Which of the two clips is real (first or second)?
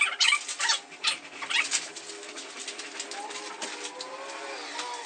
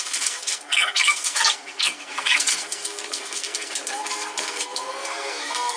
first